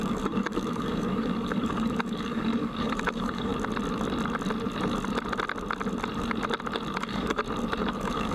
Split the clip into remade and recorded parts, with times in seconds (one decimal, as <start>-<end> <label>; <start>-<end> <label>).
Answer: 0.0-3.5 remade; 3.5-7.0 recorded; 7.0-7.4 remade; 7.4-7.9 recorded; 7.9-8.3 remade